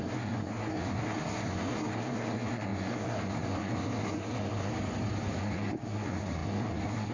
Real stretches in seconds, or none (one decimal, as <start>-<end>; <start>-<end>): 4.7-5.4